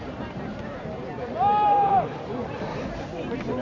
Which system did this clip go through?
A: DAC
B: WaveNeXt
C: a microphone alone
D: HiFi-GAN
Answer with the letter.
C